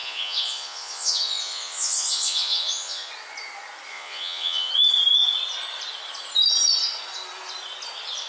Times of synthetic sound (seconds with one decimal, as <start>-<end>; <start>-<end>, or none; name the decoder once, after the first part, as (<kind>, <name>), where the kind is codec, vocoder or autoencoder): 0.0-3.1 (vocoder, Vocos); 3.9-4.7